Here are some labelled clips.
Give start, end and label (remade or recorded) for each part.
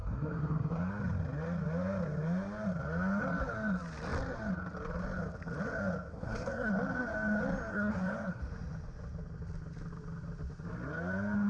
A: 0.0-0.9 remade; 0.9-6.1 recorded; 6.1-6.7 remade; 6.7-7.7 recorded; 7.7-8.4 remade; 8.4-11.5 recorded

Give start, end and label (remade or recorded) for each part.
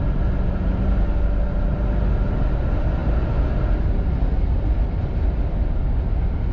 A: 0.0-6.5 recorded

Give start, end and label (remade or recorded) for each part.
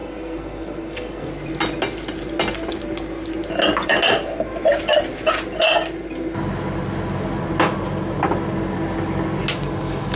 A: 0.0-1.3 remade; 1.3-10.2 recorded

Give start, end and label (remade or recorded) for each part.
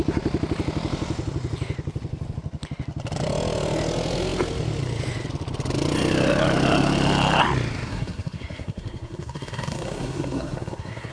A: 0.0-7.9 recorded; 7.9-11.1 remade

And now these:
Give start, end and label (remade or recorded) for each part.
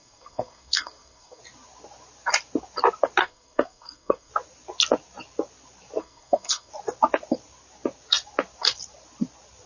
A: 0.0-1.4 remade; 1.4-3.2 recorded; 3.2-4.3 remade; 4.3-6.0 recorded; 6.0-6.7 remade; 6.7-9.7 recorded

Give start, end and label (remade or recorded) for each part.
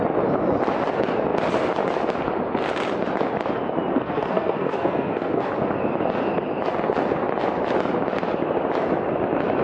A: 0.0-3.9 recorded; 3.9-5.5 remade; 5.5-9.6 recorded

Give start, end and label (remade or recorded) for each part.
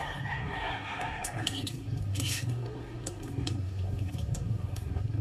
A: 0.0-5.2 remade